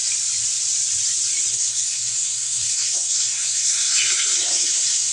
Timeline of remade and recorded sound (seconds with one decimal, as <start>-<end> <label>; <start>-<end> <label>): 0.0-1.5 recorded; 1.5-5.1 remade